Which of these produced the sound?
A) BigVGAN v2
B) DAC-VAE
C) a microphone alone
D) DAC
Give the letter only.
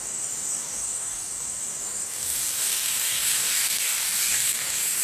D